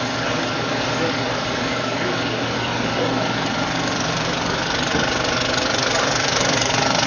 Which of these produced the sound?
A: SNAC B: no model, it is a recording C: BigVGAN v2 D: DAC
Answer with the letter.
D